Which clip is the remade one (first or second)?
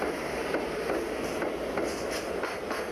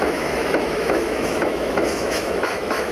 second